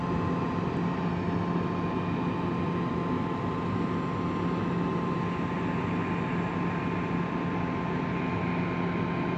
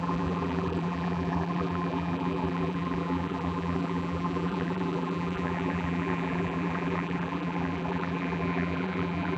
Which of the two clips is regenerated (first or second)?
second